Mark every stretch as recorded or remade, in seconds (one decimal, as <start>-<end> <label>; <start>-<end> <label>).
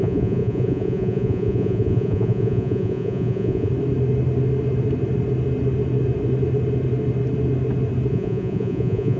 0.0-3.7 remade; 3.7-8.1 recorded; 8.1-9.2 remade